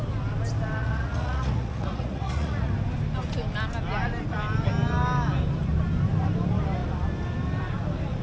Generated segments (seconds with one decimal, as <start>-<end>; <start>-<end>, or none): 0.8-2.7